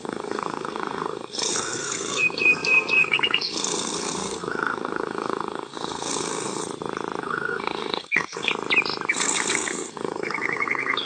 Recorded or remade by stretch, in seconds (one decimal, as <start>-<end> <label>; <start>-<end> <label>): 0.0-6.6 remade; 6.6-7.2 recorded; 7.2-8.5 remade; 8.5-9.1 recorded; 9.1-11.1 remade